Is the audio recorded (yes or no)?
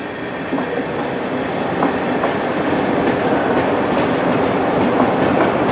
no